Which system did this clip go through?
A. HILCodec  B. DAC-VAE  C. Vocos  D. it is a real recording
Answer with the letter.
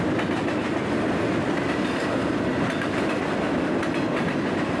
D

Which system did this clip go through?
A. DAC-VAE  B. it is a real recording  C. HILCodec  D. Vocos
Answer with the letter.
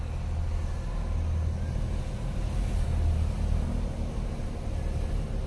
B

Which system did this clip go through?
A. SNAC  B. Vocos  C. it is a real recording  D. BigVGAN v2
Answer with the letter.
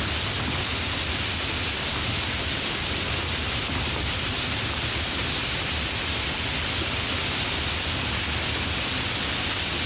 C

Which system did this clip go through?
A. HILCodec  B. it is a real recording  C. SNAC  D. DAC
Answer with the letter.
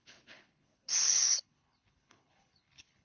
A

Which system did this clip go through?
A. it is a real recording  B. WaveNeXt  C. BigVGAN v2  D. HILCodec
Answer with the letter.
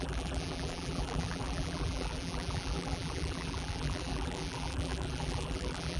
C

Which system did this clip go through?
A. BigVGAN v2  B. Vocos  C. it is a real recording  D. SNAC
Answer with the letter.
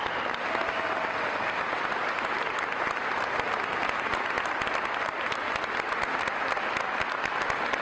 C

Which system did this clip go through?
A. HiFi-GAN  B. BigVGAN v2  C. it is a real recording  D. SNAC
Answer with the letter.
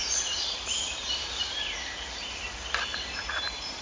B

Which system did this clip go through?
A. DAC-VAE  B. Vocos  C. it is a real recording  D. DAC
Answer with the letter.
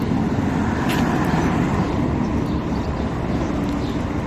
C